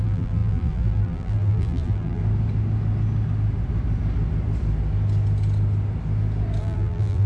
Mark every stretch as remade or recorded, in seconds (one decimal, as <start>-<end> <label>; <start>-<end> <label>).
0.0-2.2 remade; 2.2-6.6 recorded; 6.6-7.3 remade

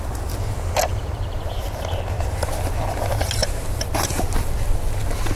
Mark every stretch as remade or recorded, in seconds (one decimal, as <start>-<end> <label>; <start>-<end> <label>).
0.0-0.9 recorded; 0.9-1.5 remade; 1.5-3.4 recorded; 3.4-4.2 remade; 4.2-5.4 recorded

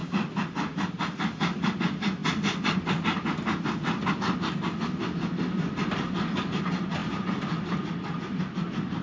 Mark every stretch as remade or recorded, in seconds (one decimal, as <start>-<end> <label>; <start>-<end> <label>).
0.0-1.8 remade; 1.8-7.0 recorded; 7.0-8.4 remade; 8.4-9.0 recorded

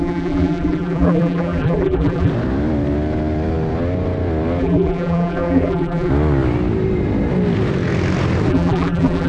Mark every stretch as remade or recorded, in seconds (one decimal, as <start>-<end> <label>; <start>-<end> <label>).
0.0-2.3 remade; 2.3-4.6 recorded; 4.6-6.1 remade; 6.1-8.5 recorded; 8.5-9.3 remade